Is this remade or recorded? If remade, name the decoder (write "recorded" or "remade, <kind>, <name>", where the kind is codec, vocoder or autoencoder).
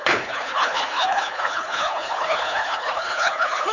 remade, codec, HILCodec